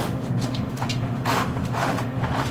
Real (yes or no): no